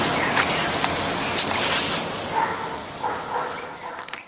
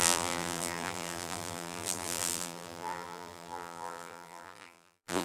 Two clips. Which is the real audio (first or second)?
first